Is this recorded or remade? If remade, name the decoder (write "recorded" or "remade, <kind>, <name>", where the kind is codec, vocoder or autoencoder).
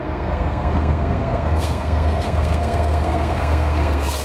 remade, codec, SNAC